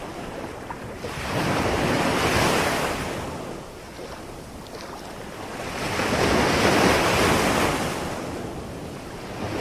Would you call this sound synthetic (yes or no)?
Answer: no